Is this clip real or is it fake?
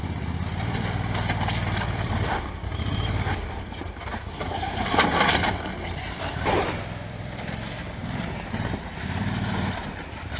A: fake